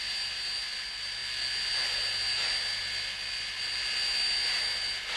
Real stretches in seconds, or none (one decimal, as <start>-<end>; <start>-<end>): 0.0-5.2

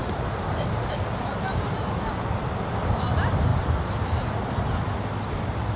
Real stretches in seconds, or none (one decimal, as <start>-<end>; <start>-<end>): 1.2-3.5; 4.3-5.8